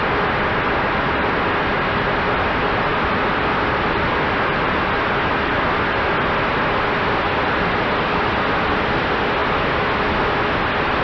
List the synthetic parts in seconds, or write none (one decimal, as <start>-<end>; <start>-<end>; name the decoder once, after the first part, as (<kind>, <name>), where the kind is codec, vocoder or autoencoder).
2.9-5.2 (vocoder, BigVGAN v2)